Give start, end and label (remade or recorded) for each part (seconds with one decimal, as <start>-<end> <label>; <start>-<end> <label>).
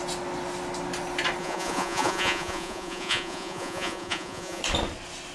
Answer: 0.0-1.4 recorded; 1.4-4.6 remade; 4.6-5.3 recorded